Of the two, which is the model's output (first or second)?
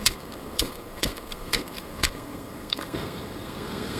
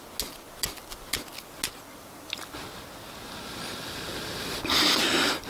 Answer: first